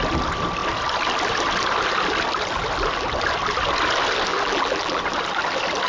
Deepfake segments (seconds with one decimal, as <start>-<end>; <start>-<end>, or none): 4.3-5.0